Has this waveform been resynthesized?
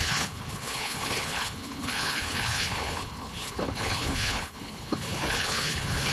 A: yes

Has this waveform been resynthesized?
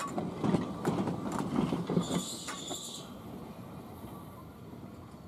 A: no